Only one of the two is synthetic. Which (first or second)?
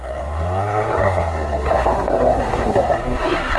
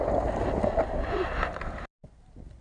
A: first